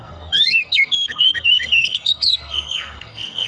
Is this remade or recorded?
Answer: remade